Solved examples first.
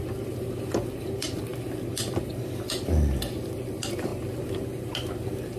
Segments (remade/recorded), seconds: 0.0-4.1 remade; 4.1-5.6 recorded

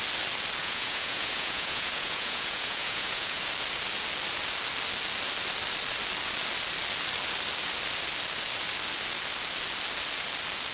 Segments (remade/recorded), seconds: 0.0-0.6 recorded; 0.6-3.4 remade; 3.4-10.7 recorded

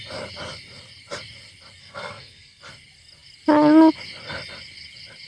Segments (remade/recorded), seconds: 0.0-1.8 recorded; 1.8-2.6 remade; 2.6-5.3 recorded

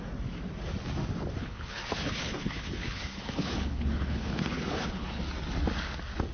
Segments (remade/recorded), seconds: 0.0-1.4 recorded; 1.4-5.2 remade; 5.2-6.3 recorded